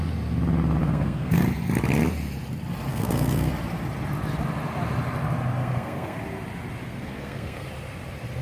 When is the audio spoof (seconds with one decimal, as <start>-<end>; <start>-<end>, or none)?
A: 0.8-1.4; 2.9-3.5; 5.6-6.2; 6.8-7.7